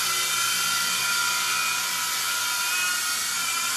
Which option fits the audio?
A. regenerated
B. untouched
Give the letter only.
B